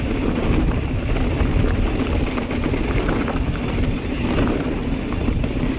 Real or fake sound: real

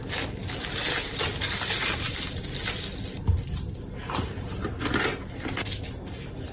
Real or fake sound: real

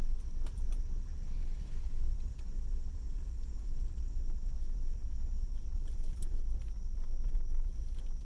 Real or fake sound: fake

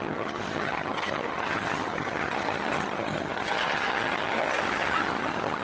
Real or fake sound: fake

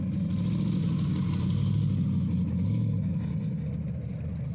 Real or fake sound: real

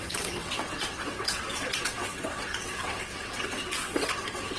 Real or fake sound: fake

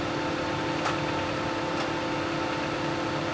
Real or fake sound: real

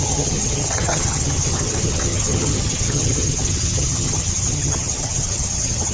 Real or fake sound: fake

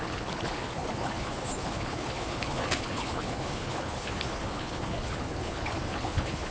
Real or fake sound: fake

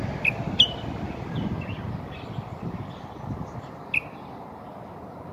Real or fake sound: real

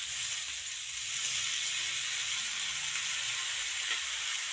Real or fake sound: fake